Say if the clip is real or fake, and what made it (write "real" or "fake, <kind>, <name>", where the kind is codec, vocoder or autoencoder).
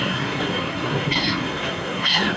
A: fake, codec, SNAC